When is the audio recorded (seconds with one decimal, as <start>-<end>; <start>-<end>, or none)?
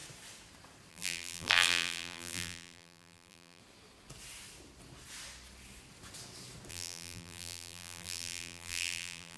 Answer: 0.0-0.9; 3.6-6.7